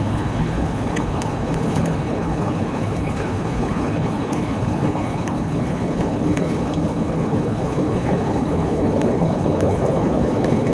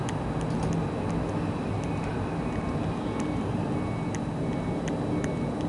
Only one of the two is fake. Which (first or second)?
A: first